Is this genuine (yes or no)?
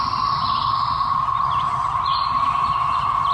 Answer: yes